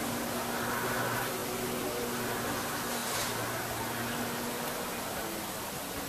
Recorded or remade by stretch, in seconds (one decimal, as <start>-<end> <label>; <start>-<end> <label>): 0.0-6.1 recorded